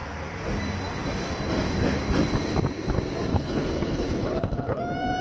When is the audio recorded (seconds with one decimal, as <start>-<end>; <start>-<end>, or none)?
0.0-3.3; 4.8-5.2